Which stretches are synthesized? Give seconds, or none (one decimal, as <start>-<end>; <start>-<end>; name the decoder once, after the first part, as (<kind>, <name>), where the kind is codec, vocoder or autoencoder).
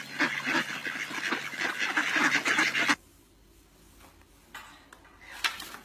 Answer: none